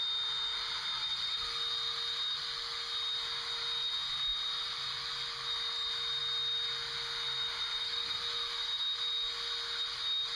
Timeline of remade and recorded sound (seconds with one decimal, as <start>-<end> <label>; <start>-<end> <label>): 0.0-10.4 recorded